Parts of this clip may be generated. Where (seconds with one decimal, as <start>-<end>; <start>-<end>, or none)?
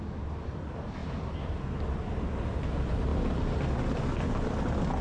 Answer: none